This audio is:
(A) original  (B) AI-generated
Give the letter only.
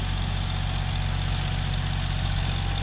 A